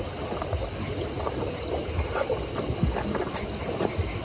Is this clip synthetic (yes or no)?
no